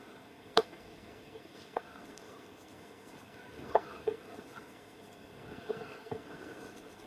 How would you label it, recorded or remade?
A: remade